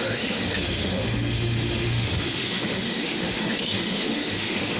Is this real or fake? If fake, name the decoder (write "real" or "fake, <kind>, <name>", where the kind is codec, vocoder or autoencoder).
fake, autoencoder, DAC-VAE